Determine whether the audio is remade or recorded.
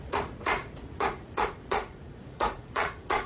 remade